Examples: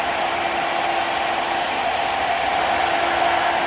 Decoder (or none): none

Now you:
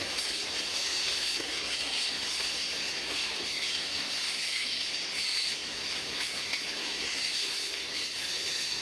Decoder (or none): codec, SNAC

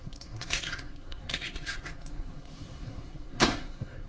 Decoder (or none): codec, SNAC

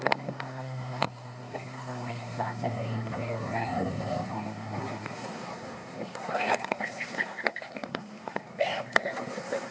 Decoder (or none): codec, SNAC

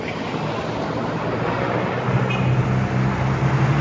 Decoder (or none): none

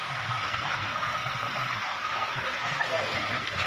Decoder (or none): codec, SNAC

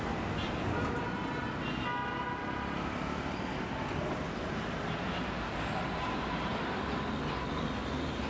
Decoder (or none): none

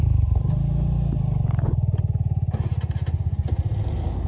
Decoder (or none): none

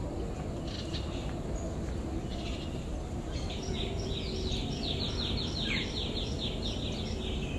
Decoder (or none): none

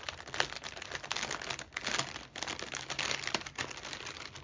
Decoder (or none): none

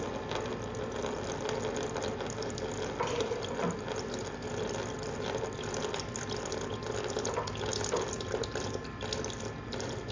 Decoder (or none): none